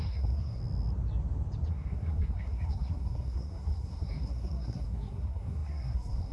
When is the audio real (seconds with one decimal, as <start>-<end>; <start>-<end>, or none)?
0.6-1.7